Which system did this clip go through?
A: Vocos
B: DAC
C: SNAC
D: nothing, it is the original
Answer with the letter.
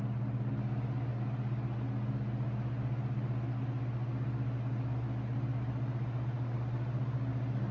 D